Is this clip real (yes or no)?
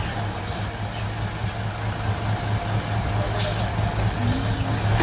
yes